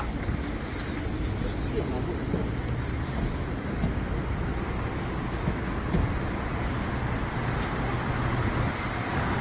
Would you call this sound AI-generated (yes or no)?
no